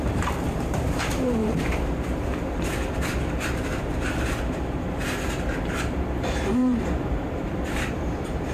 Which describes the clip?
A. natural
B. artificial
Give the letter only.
B